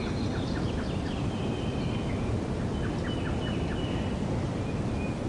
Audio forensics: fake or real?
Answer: real